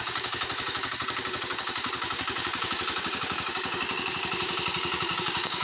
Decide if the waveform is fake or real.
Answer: fake